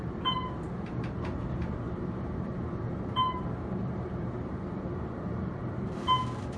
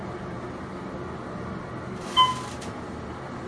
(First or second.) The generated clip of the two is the first